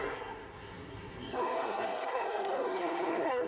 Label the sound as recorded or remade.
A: remade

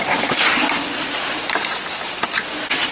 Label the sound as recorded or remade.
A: recorded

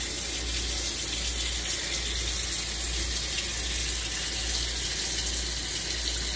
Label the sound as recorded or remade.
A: recorded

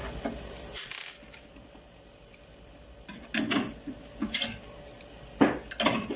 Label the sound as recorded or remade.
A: recorded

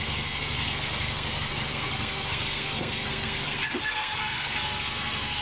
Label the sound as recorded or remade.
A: remade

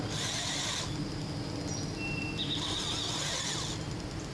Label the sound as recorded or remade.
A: recorded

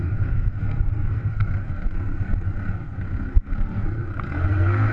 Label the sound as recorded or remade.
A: remade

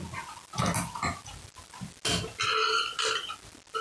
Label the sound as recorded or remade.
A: recorded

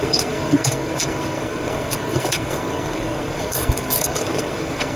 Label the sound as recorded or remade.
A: remade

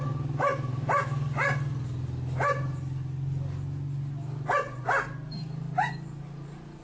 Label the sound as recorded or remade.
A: recorded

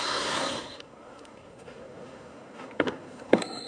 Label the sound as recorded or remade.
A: remade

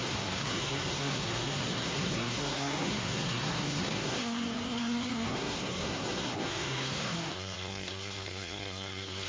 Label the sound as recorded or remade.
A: remade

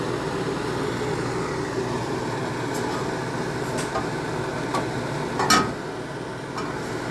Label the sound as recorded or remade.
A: recorded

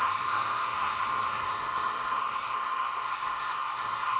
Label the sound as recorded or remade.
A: remade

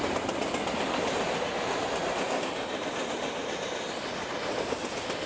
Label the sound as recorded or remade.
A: recorded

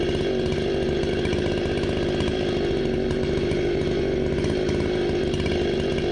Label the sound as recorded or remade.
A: recorded